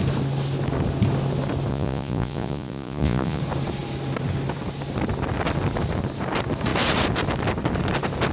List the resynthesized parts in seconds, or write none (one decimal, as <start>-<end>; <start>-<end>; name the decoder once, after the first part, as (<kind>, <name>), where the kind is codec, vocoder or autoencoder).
1.7-3.4 (vocoder, Vocos)